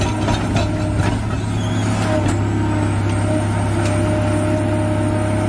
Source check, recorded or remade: recorded